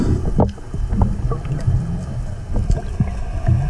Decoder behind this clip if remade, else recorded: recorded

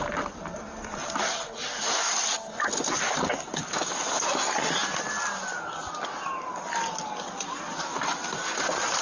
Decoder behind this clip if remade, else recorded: recorded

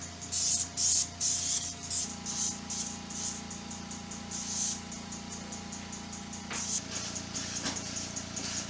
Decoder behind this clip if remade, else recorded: recorded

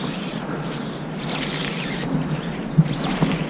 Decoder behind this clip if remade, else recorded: recorded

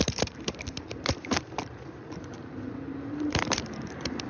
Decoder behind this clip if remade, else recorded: remade, vocoder, BigVGAN v2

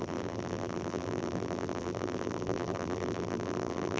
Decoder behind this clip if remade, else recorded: remade, vocoder, BigVGAN v2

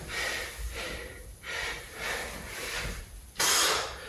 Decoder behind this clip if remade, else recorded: remade, vocoder, BigVGAN v2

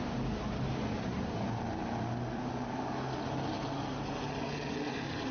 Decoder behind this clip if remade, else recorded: recorded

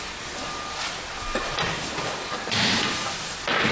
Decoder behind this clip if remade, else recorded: recorded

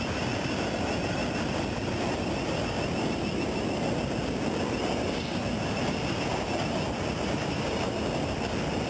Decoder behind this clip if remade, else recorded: recorded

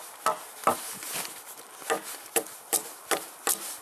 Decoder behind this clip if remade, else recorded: remade, vocoder, BigVGAN v2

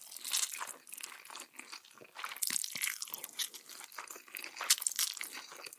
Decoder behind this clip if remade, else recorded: recorded